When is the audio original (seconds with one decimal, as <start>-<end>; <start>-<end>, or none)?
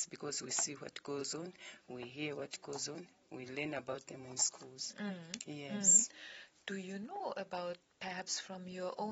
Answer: 0.0-1.2; 5.1-9.1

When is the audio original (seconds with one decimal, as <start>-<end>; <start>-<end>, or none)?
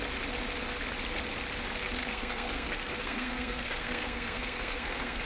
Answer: 0.0-2.0